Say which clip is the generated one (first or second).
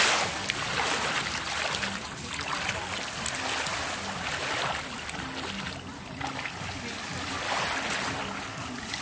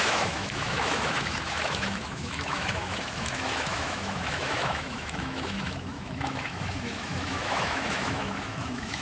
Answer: second